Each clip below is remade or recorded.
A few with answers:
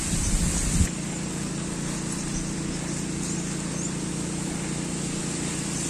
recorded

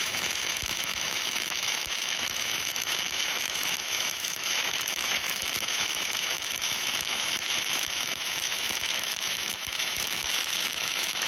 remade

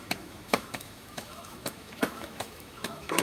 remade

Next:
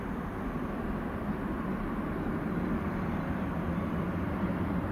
recorded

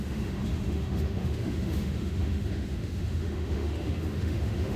remade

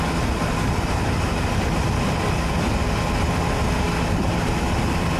recorded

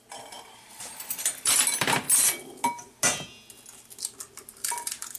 recorded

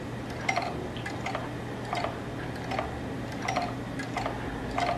recorded